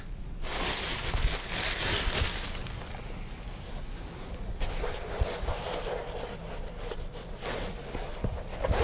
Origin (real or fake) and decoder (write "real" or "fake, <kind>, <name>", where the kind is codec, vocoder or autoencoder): real